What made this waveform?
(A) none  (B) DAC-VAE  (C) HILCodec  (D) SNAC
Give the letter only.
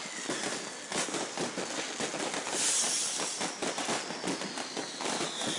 A